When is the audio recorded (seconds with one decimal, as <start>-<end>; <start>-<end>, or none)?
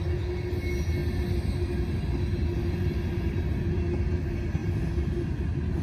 0.0-5.8